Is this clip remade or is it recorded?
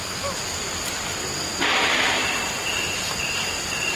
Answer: recorded